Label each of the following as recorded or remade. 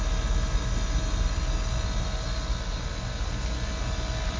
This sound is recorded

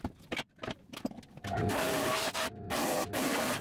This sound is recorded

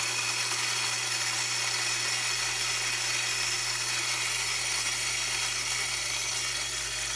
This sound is recorded